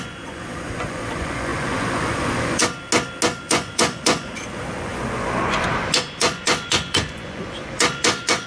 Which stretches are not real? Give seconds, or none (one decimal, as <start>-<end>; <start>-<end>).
0.0-2.6; 3.4-8.5